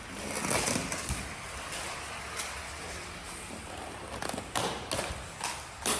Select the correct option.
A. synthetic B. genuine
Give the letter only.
B